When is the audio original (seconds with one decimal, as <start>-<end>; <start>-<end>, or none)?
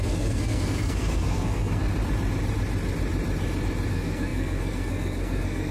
1.9-3.9